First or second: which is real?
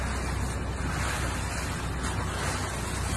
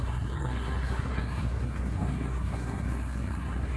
first